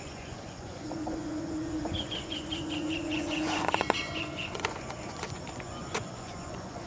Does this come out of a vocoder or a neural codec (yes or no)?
yes